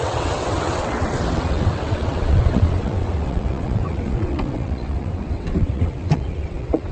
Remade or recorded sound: remade